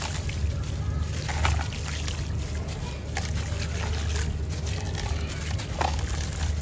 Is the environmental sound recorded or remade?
recorded